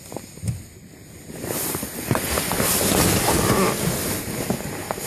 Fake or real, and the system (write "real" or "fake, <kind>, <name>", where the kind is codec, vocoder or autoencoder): real